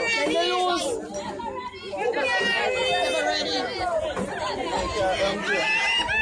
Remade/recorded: recorded